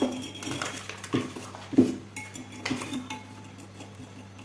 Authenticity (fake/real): real